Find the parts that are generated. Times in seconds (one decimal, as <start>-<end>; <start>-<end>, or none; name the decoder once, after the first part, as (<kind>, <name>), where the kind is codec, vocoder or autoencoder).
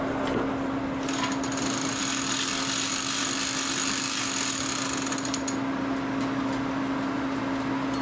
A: none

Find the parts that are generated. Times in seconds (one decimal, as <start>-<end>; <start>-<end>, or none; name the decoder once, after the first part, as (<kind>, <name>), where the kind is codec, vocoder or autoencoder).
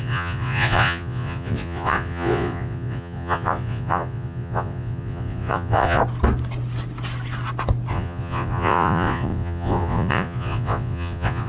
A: 0.0-6.0 (vocoder, Vocos); 7.9-11.5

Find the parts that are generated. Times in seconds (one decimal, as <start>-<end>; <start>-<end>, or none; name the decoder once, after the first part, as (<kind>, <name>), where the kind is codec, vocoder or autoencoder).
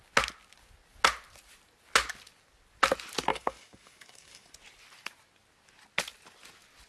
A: 3.3-4.5 (codec, DAC)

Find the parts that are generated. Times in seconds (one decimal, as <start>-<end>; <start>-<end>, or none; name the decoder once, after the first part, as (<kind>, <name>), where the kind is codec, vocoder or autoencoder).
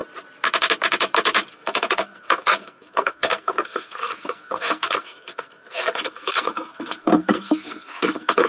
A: 1.5-8.5 (codec, SNAC)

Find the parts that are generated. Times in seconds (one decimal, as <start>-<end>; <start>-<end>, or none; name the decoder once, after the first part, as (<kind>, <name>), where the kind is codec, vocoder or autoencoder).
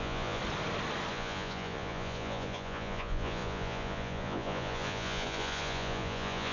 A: 0.0-0.4 (vocoder, Vocos); 1.1-6.5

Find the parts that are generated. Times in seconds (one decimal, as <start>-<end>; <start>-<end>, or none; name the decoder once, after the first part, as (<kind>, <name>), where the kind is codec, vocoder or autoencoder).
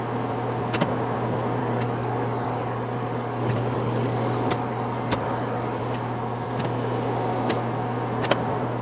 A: 1.6-5.8 (codec, DAC)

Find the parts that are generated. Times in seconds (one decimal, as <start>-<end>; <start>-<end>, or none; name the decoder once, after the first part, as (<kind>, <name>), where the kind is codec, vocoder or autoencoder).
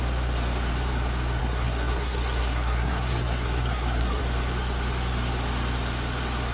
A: 1.4-4.2 (codec, SNAC)